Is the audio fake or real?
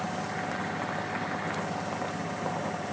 real